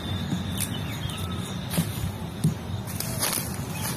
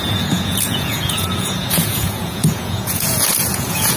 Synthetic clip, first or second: second